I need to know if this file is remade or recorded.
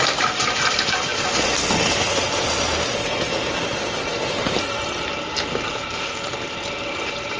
recorded